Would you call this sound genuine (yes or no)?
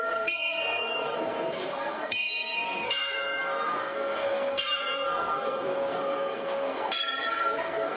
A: no